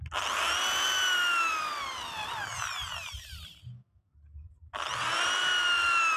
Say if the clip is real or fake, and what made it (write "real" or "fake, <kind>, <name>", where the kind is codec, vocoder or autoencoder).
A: real